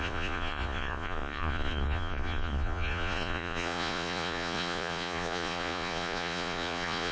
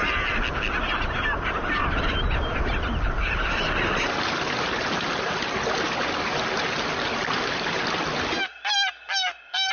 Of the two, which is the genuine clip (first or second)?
second